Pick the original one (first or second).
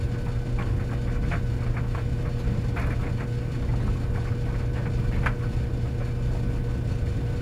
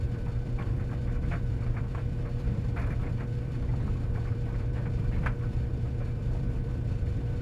first